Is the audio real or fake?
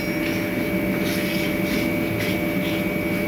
real